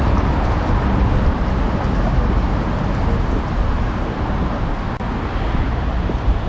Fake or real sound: real